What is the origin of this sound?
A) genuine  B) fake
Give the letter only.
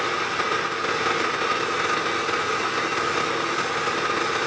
A